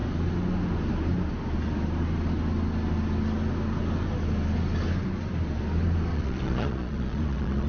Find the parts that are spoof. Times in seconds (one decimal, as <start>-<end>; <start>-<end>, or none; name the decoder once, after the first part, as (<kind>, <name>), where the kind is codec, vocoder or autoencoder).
6.1-7.7 (vocoder, Vocos)